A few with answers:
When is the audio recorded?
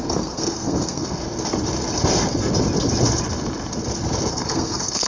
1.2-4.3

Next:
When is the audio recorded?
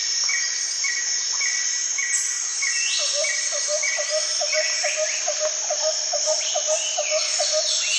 0.0-2.5; 7.3-8.0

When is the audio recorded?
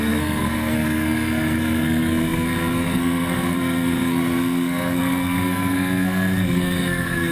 none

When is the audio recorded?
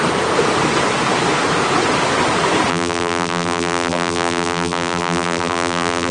0.0-2.7